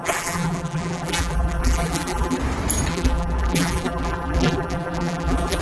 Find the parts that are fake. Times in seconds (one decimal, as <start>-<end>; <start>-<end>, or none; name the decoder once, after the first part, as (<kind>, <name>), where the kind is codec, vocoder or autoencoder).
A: 0.0-2.4 (vocoder, BigVGAN v2); 2.9-5.6